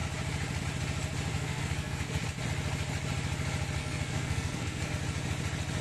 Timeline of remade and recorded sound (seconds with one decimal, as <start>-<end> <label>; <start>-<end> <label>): 0.0-1.3 recorded; 1.3-2.2 remade; 2.2-3.8 recorded; 3.8-4.9 remade; 4.9-5.8 recorded